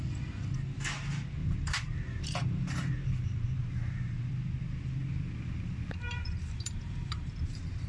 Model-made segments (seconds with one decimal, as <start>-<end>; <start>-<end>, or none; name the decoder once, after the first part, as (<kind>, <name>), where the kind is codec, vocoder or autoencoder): 1.4-4.3 (vocoder, BigVGAN v2); 6.2-7.9